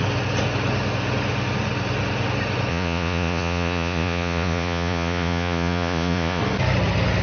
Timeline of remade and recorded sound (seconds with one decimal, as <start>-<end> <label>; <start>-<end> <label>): 0.0-2.7 recorded; 2.7-6.4 remade; 6.4-7.2 recorded